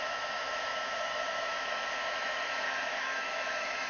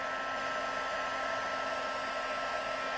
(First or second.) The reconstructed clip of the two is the first